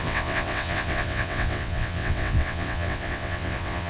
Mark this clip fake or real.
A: fake